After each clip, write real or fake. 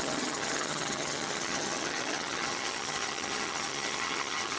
fake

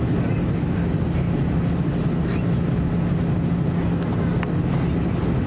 real